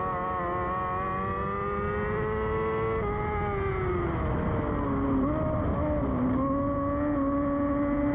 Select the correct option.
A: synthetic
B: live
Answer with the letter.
B